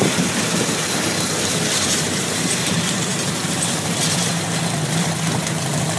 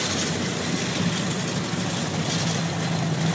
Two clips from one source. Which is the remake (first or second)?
first